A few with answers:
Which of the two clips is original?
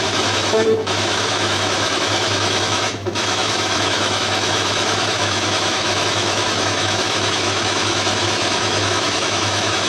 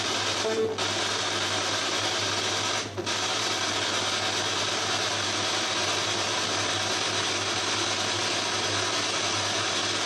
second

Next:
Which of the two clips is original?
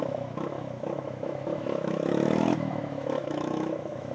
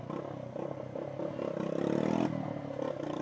second